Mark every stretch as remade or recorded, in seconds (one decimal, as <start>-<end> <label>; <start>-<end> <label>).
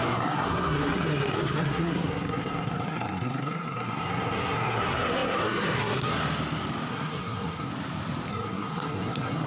0.0-6.2 remade; 6.2-6.9 recorded; 6.9-7.7 remade; 7.7-8.3 recorded; 8.3-9.5 remade